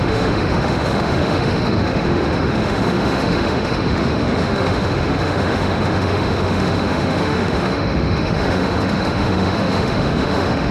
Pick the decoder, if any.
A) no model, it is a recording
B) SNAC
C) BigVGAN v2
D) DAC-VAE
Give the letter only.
D